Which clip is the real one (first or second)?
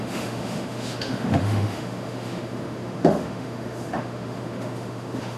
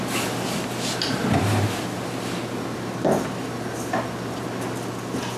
second